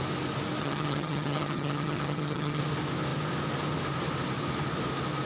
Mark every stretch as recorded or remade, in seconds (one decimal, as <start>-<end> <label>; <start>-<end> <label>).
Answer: 0.0-0.6 recorded; 0.6-2.6 remade; 2.6-5.3 recorded